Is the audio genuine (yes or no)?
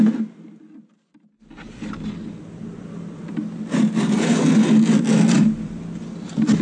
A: yes